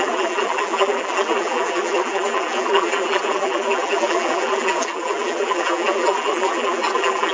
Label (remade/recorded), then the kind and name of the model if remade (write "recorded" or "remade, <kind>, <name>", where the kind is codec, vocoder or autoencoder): remade, vocoder, BigVGAN v2